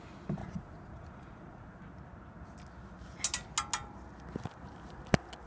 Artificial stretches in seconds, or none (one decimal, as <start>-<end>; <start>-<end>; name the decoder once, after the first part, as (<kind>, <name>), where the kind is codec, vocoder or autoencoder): 0.4-1.8 (vocoder, Vocos)